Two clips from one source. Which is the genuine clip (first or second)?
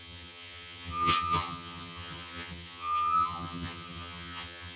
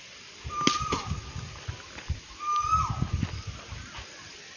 second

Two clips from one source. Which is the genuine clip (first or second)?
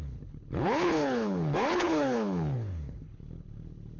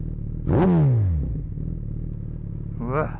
second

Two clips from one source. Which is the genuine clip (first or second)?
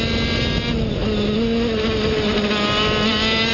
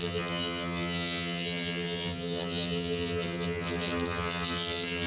first